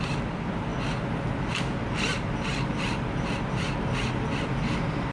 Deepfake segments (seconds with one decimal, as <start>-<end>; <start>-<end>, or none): none